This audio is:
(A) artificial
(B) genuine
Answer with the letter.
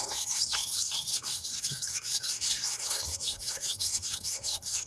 A